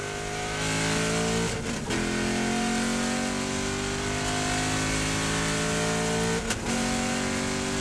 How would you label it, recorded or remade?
recorded